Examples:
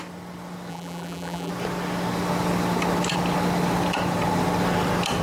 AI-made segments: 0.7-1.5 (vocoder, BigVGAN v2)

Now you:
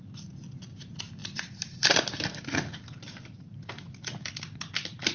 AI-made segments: 1.2-4.3 (vocoder, BigVGAN v2)